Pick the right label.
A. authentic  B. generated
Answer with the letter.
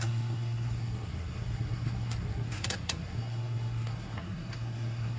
B